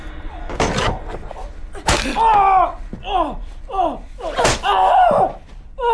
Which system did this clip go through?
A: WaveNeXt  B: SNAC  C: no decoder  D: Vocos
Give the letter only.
C